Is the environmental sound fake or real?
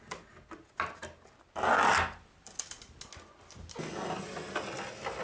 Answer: real